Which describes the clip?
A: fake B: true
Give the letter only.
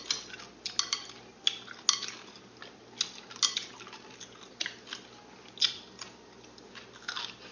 B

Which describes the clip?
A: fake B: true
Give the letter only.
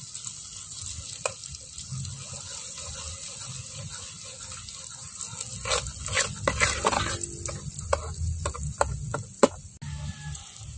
B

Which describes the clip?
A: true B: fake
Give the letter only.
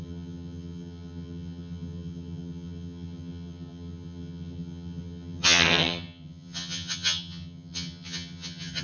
B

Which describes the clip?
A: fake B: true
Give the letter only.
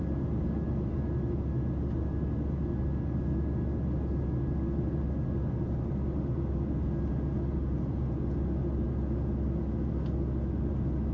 B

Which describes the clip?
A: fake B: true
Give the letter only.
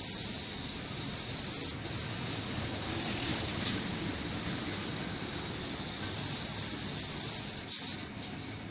B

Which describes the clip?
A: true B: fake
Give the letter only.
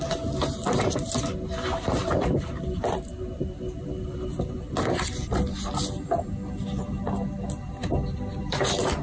A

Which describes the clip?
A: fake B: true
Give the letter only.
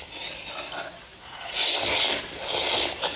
B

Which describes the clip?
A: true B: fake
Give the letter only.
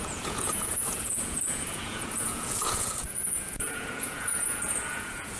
B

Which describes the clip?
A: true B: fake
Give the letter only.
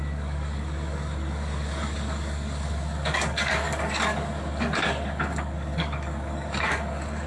B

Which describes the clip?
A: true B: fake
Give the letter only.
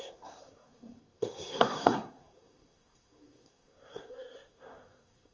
B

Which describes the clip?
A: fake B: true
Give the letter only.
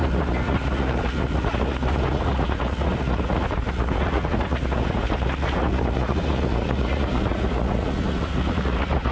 A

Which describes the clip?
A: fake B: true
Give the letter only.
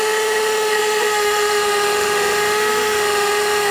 A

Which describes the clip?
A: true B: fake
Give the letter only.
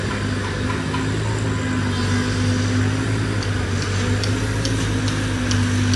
A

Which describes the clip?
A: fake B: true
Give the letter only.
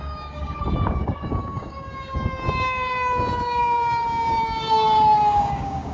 A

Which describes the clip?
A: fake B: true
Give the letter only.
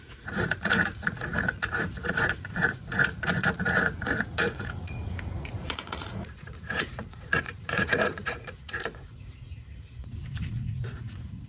A